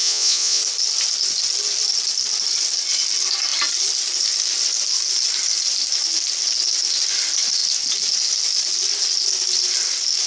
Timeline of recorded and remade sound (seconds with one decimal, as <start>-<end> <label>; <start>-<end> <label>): 0.0-0.6 remade; 0.6-10.3 recorded